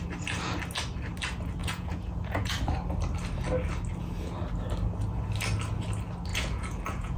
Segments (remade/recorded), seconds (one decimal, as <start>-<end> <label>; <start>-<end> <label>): 0.0-1.6 recorded; 1.6-2.5 remade; 2.5-6.3 recorded; 6.3-7.2 remade